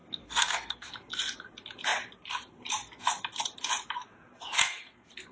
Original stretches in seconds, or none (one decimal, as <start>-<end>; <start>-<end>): 0.9-4.6